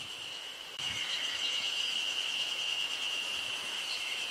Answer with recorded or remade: remade